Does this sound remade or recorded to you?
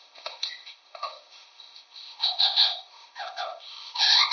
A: remade